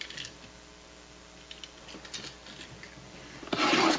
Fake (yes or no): no